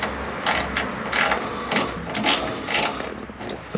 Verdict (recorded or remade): recorded